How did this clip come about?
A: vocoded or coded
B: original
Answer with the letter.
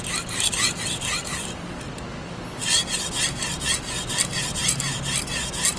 B